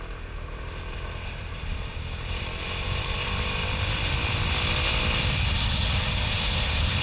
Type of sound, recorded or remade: remade